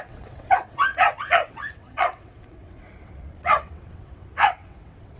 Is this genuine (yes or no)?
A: no